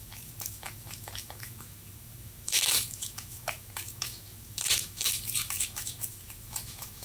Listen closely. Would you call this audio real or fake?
fake